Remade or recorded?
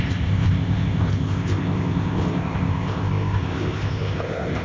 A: remade